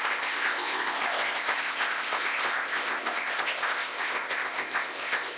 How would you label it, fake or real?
fake